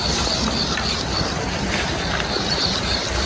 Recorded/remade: recorded